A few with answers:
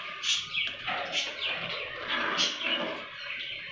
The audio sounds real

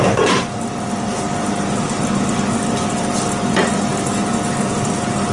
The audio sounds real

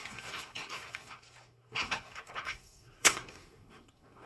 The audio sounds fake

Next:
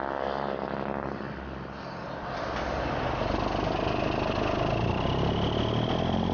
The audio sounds real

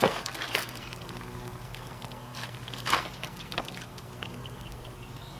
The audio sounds fake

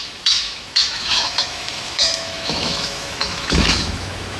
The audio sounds fake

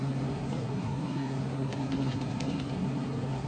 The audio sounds fake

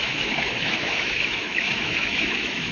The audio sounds fake